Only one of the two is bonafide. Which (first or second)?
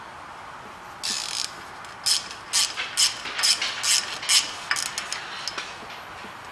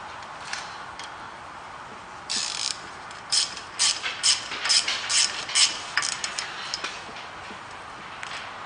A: first